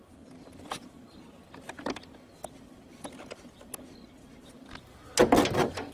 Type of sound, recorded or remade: recorded